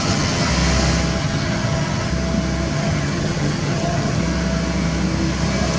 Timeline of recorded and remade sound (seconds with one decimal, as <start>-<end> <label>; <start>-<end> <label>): 0.0-0.5 remade; 0.5-1.2 recorded; 1.2-2.1 remade; 2.1-2.7 recorded; 2.7-4.2 remade; 4.2-5.8 recorded

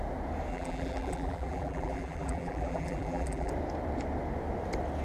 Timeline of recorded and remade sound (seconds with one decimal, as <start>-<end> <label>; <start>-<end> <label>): 0.0-0.5 recorded; 0.5-3.5 remade; 3.5-5.0 recorded

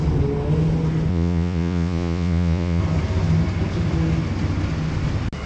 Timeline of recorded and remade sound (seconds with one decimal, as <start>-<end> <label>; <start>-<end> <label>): 0.0-1.1 recorded; 1.1-2.8 remade; 2.8-5.5 recorded

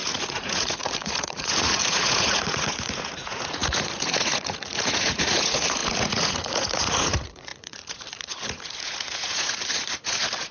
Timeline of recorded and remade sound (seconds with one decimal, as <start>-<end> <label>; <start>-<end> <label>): 0.0-10.5 remade